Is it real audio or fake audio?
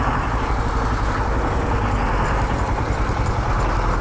real